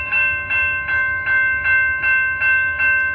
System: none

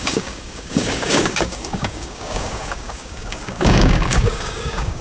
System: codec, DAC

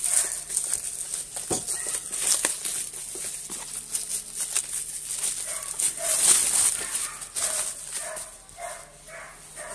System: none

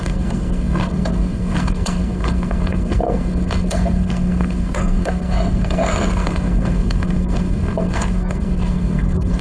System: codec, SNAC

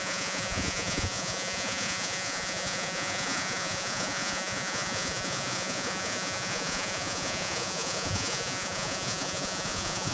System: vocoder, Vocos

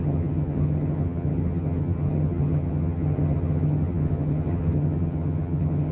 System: vocoder, HiFi-GAN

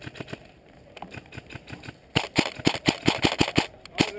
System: none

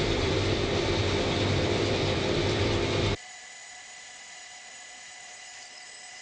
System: vocoder, BigVGAN v2